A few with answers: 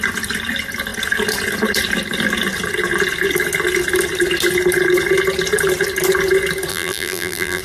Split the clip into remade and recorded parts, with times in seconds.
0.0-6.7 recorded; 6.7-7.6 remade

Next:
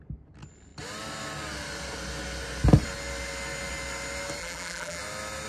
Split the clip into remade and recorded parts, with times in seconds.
0.0-4.4 recorded; 4.4-5.0 remade; 5.0-5.5 recorded